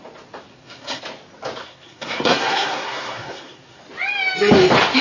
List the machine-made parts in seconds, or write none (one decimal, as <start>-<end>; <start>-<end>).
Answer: 0.5-1.0; 1.6-3.8